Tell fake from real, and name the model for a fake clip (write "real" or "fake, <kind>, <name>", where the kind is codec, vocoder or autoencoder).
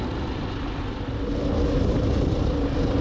real